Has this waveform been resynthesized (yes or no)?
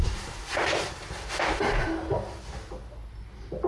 no